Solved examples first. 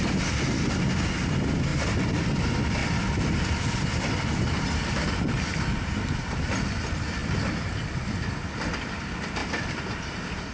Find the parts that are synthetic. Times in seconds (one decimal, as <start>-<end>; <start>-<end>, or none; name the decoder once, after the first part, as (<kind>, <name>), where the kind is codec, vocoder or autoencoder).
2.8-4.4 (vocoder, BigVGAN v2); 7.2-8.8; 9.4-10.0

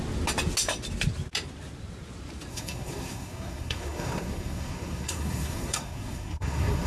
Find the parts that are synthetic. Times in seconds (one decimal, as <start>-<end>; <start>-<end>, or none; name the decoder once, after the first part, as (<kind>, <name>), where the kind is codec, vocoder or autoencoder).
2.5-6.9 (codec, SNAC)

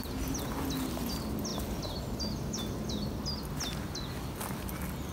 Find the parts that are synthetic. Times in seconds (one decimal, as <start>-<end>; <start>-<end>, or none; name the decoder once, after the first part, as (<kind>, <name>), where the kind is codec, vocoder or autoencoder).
none